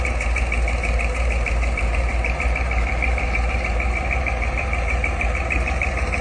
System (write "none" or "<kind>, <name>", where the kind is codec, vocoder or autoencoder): vocoder, BigVGAN v2